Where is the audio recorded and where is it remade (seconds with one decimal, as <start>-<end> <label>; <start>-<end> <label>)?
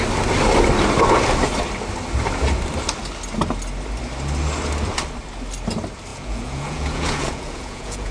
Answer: 0.0-6.1 recorded; 6.1-8.1 remade